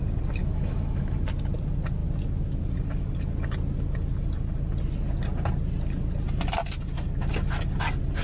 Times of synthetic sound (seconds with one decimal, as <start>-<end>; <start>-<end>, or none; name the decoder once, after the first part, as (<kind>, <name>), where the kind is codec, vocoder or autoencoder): 0.4-1.2 (autoencoder, DAC-VAE)